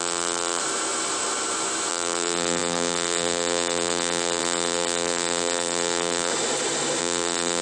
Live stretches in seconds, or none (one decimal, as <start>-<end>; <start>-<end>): 0.6-1.9; 6.3-7.0